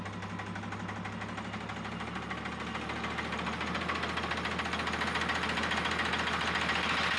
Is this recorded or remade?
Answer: recorded